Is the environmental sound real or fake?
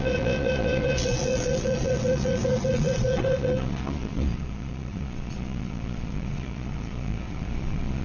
fake